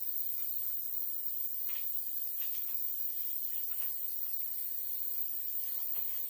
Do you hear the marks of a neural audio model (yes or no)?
yes